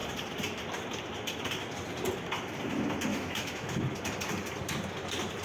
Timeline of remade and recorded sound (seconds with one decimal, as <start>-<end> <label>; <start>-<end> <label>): 0.0-3.1 recorded; 3.1-3.8 remade; 3.8-5.4 recorded